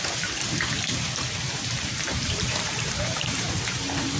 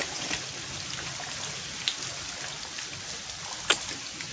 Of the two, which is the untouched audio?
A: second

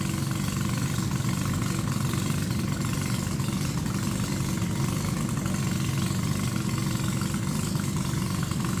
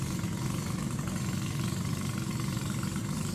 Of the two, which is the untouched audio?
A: first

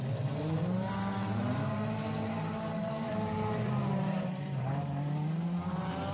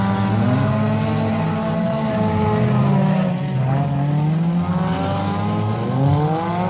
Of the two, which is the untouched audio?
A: second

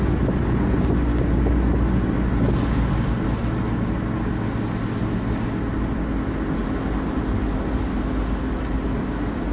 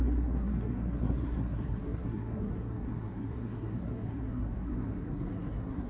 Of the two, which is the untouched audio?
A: first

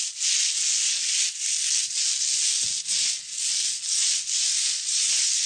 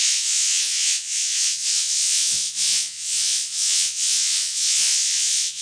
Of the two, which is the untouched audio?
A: first